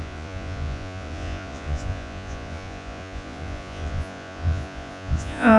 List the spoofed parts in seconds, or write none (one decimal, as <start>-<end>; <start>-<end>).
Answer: 0.0-5.6

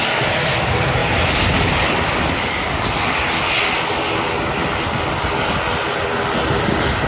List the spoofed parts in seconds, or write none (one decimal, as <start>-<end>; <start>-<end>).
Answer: none

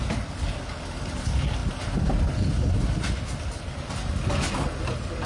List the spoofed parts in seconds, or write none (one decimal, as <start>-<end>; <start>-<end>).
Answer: none

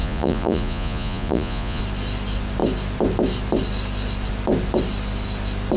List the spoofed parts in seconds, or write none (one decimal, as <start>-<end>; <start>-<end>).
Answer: 0.0-1.8

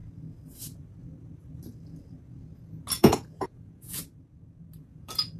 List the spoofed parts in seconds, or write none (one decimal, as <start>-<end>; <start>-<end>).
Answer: 2.9-4.0; 4.8-5.4

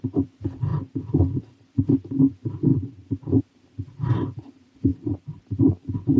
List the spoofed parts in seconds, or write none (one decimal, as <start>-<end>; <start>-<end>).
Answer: none